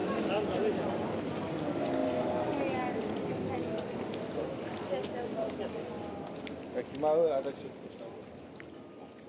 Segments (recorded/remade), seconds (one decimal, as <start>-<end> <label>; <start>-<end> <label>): 0.0-9.3 recorded